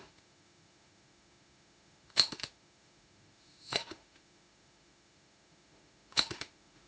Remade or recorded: remade